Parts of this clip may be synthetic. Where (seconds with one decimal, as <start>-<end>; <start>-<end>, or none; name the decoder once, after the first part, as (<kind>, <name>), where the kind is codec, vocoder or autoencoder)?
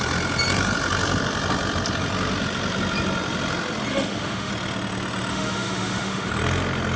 3.9-4.5 (autoencoder, DAC-VAE); 5.3-6.3